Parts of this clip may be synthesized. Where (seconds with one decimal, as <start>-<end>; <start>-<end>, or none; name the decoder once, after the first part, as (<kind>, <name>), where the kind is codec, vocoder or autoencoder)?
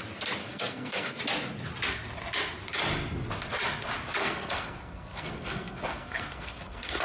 0.4-1.2 (codec, SNAC); 4.2-7.0